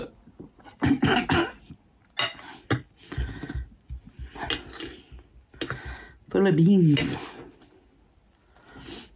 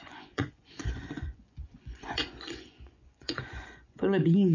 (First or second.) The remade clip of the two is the second